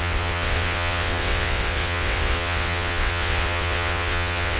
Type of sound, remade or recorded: remade